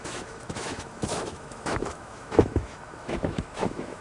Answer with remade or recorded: remade